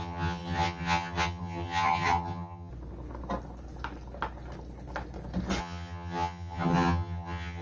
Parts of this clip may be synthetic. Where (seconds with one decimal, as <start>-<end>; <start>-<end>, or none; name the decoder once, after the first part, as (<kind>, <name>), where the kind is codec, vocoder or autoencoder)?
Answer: 0.0-2.7 (vocoder, HiFi-GAN); 5.6-7.6